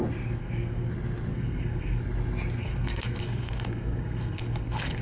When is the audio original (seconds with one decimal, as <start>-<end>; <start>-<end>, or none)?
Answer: 0.0-0.4; 0.9-1.3; 2.0-2.6